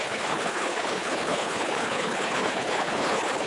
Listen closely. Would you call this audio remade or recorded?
remade